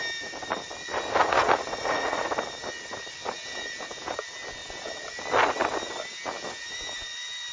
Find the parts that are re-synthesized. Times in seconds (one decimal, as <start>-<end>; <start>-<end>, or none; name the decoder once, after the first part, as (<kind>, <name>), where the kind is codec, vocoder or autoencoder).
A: 1.2-2.3 (vocoder, Vocos)